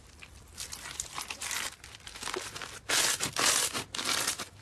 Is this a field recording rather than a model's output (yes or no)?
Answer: yes